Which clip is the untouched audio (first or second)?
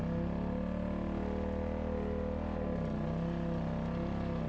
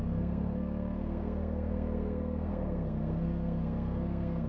first